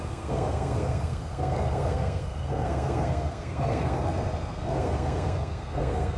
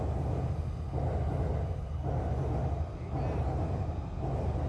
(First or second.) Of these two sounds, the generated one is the first